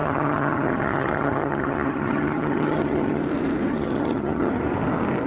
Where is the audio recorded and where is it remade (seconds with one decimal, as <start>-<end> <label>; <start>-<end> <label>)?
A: 0.0-3.2 remade; 3.2-3.7 recorded; 3.7-4.5 remade; 4.5-5.3 recorded

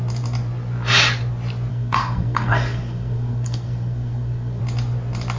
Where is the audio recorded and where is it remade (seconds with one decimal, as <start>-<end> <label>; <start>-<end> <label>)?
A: 0.0-1.7 recorded; 1.7-4.6 remade; 4.6-5.4 recorded

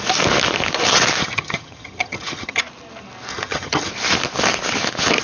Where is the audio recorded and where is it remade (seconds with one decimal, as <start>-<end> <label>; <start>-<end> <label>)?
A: 0.0-1.2 recorded; 1.2-2.6 remade; 2.6-3.3 recorded; 3.3-3.9 remade; 3.9-5.2 recorded